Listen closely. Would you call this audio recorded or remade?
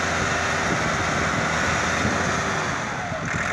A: recorded